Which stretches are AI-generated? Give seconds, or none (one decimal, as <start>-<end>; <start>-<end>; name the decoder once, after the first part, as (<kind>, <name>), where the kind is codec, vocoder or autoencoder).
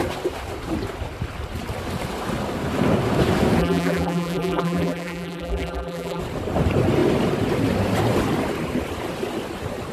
3.6-6.2 (vocoder, BigVGAN v2)